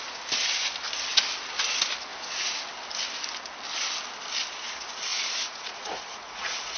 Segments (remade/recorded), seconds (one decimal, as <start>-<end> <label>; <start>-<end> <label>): 0.0-2.1 recorded; 2.1-2.6 remade; 2.6-5.1 recorded; 5.1-6.8 remade